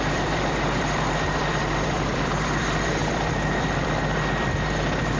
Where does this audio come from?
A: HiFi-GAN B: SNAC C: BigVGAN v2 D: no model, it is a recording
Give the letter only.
C